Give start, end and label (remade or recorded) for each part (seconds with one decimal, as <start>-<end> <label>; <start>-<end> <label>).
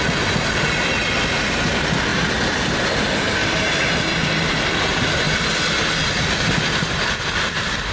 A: 0.0-4.9 remade; 4.9-6.9 recorded; 6.9-7.9 remade